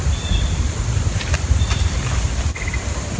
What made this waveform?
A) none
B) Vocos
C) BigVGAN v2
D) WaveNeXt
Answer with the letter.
C